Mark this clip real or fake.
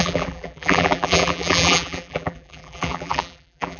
fake